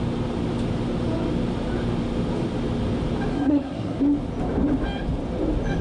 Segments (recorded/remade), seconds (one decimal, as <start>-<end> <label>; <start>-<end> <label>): 0.0-3.3 recorded; 3.3-4.0 remade; 4.0-5.8 recorded